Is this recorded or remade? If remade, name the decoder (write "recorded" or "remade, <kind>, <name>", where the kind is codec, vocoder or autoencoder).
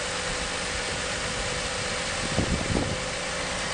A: recorded